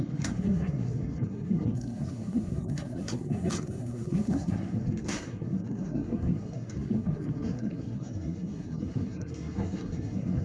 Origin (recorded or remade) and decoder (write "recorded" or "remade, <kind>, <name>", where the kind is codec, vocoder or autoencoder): remade, codec, SNAC